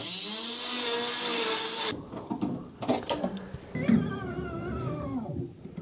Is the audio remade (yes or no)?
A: no